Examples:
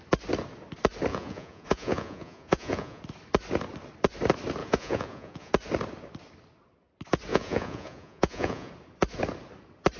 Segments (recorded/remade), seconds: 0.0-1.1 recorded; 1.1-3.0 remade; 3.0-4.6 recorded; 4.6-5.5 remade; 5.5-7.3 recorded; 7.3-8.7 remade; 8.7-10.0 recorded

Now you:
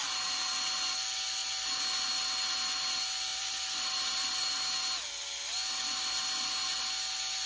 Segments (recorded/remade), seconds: 0.0-3.3 recorded; 3.3-4.5 remade; 4.5-7.5 recorded